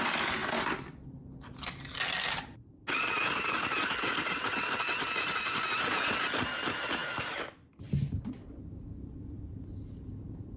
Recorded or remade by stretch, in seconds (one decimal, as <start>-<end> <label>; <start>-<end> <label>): 0.0-10.6 recorded